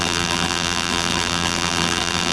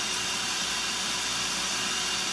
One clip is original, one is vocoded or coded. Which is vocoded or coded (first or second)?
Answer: first